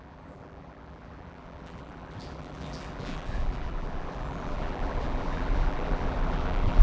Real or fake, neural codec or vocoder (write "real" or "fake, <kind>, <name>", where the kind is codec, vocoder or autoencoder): fake, vocoder, BigVGAN v2